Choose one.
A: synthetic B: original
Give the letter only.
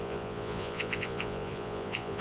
A